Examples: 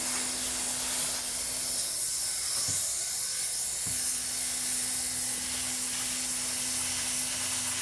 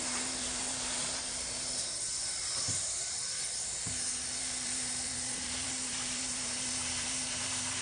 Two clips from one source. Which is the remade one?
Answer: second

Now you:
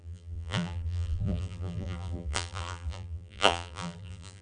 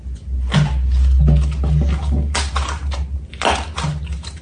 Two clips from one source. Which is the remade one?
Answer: first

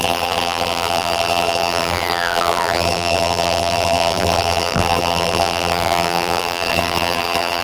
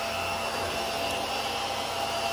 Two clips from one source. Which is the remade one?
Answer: first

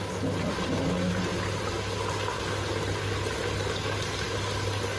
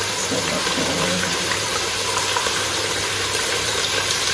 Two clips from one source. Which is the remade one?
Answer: second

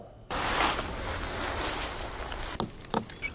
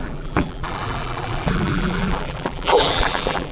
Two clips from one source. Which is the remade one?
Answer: second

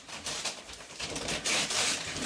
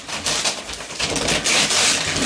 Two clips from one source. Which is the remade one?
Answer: first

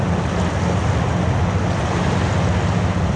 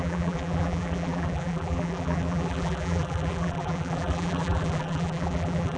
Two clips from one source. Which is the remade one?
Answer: second